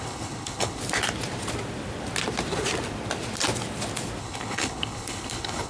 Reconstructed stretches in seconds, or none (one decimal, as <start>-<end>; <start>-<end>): 0.0-0.8; 4.2-5.7